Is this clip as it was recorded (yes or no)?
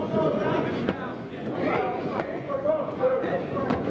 no